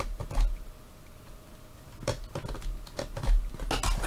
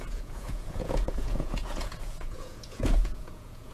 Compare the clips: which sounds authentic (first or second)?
first